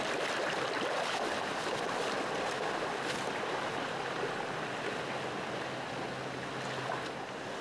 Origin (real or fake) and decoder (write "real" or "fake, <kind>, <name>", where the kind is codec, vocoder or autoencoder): real